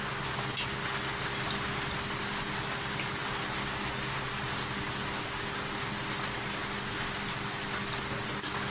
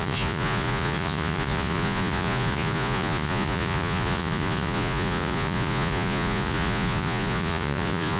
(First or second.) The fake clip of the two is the second